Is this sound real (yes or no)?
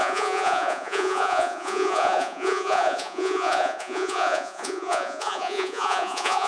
no